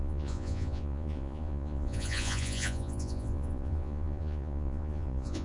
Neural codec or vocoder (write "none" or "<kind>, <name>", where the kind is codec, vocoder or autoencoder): vocoder, Vocos